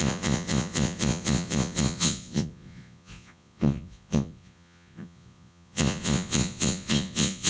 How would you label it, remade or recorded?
remade